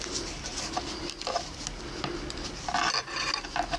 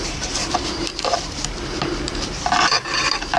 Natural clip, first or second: first